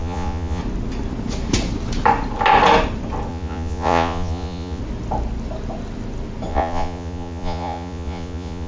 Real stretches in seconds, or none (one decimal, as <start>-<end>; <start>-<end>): 0.6-3.3; 4.8-6.5